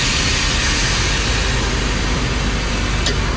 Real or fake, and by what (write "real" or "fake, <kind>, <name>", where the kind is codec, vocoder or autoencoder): real